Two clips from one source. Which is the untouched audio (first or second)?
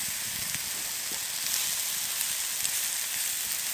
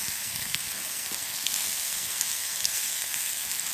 first